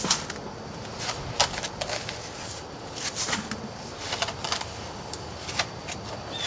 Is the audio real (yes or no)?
yes